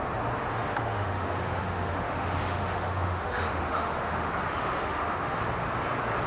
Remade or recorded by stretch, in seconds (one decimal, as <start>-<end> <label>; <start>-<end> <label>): 0.0-0.5 recorded; 0.5-4.3 remade; 4.3-4.8 recorded; 4.8-5.4 remade; 5.4-6.3 recorded